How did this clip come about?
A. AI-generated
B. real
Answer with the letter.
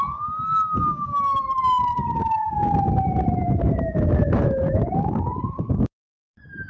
A